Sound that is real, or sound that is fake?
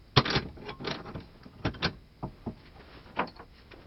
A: real